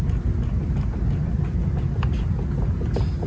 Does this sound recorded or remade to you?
recorded